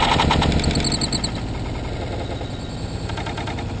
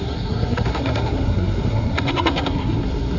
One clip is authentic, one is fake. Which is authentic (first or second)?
first